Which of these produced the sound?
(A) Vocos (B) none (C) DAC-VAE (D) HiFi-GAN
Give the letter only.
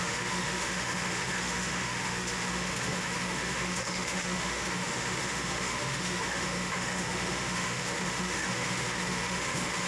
C